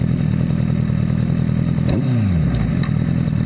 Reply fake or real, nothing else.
real